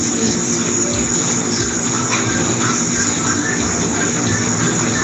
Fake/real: real